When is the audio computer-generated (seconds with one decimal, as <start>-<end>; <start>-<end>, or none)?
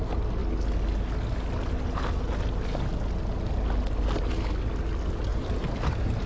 5.3-6.3